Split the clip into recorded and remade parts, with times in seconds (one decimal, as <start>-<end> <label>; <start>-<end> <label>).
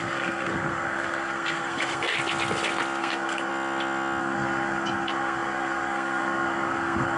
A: 0.0-2.1 remade; 2.1-3.0 recorded; 3.0-3.5 remade; 3.5-4.2 recorded; 4.2-7.2 remade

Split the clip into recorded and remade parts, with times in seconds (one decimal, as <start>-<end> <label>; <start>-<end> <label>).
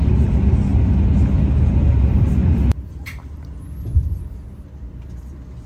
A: 0.0-2.4 recorded; 2.4-3.5 remade; 3.5-3.9 recorded; 3.9-5.1 remade; 5.1-5.7 recorded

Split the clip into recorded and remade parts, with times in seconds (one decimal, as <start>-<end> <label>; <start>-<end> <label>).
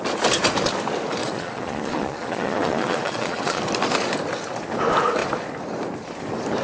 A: 0.0-1.2 recorded; 1.2-3.6 remade; 3.6-6.6 recorded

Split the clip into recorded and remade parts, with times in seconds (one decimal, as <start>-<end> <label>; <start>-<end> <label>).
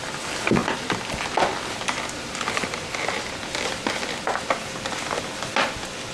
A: 0.0-6.1 recorded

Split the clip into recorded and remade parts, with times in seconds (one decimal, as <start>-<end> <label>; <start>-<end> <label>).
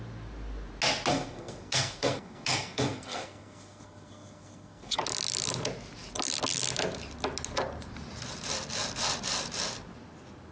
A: 0.0-1.1 recorded; 1.1-5.0 remade; 5.0-10.5 recorded